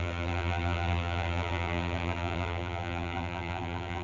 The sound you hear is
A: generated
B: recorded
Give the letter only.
A